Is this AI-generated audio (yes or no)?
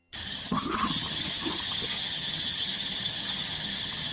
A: yes